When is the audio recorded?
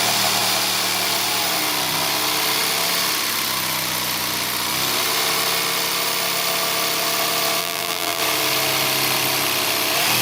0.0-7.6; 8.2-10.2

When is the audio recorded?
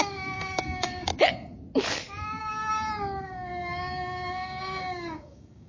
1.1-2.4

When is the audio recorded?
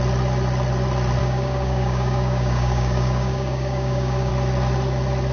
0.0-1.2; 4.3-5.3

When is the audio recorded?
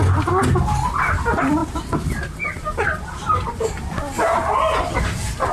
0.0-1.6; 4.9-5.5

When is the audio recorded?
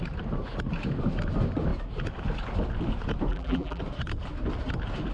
0.0-3.3; 3.8-5.1